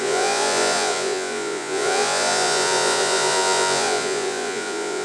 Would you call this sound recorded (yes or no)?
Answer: no